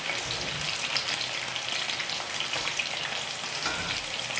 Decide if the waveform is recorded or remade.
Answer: recorded